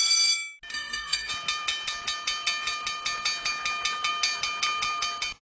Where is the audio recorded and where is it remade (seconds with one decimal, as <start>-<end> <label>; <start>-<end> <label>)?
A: 0.0-0.7 recorded; 0.7-1.3 remade; 1.3-5.6 recorded